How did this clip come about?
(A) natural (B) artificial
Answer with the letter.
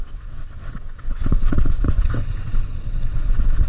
B